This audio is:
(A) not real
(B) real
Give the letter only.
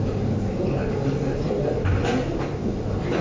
B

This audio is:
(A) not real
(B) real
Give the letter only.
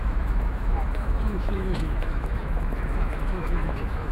A